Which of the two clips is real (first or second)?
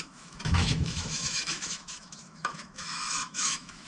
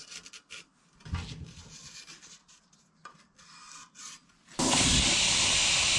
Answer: second